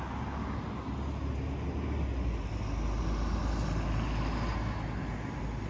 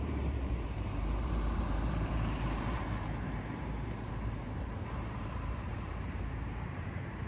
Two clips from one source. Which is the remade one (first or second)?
second